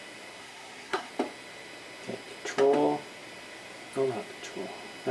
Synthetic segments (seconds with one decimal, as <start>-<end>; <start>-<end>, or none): 0.4-1.1